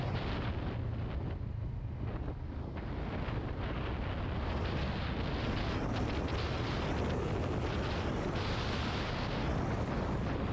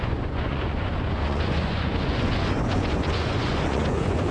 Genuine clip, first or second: first